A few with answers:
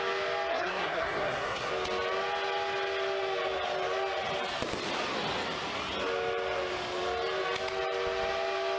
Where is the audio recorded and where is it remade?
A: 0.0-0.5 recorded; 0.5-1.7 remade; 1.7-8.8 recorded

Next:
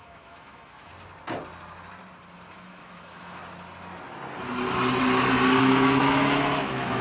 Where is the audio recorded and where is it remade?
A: 0.0-0.9 remade; 0.9-2.5 recorded; 2.5-3.4 remade; 3.4-5.6 recorded; 5.6-7.0 remade

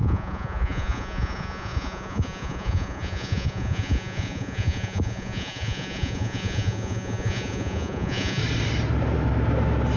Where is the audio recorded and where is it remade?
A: 0.0-8.4 remade; 8.4-10.0 recorded

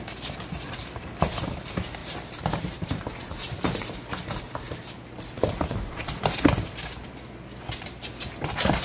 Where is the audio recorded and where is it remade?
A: 0.0-0.8 recorded; 0.8-1.4 remade; 1.4-2.0 recorded; 2.0-7.1 remade; 7.1-8.8 recorded

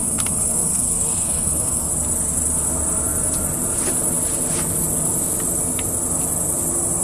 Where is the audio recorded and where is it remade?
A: 0.0-1.9 remade; 1.9-7.0 recorded

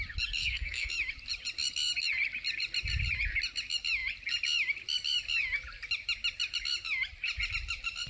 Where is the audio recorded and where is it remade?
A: 0.0-0.4 recorded; 0.4-0.9 remade; 0.9-8.1 recorded

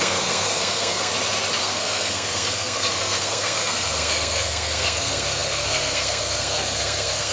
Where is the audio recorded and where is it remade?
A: 0.0-1.1 remade; 1.1-1.6 recorded; 1.6-7.3 remade